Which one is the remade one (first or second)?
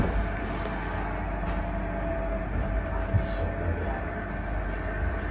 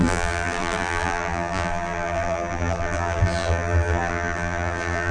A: second